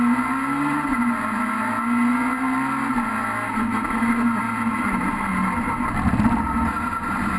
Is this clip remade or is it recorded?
recorded